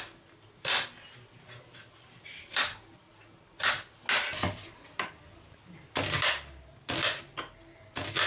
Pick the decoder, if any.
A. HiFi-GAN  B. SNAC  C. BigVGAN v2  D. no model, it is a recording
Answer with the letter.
D